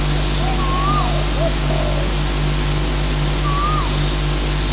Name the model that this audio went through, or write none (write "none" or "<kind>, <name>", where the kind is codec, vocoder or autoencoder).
none